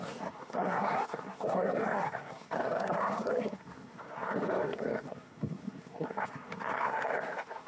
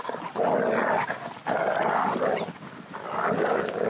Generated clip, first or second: first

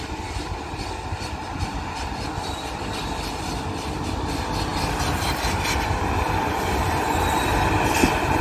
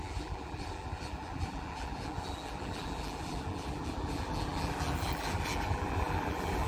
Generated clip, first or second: second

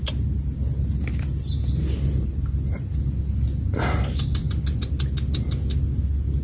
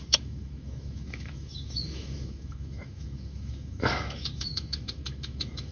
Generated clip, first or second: second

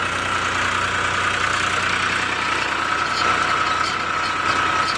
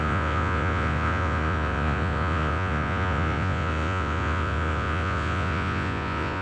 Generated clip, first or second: second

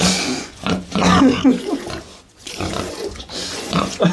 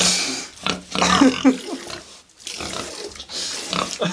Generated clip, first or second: first